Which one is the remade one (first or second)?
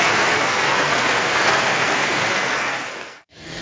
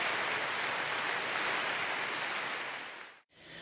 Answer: first